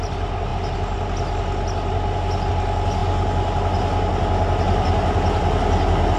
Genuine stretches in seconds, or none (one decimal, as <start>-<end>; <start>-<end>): 0.0-6.2